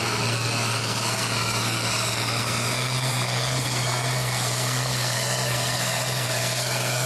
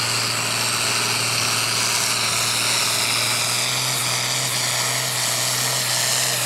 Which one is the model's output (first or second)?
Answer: first